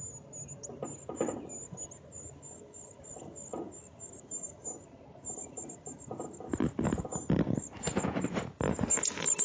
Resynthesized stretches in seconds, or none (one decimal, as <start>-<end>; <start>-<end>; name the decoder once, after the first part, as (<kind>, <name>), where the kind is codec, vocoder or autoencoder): none